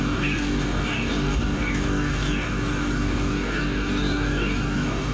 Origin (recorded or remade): remade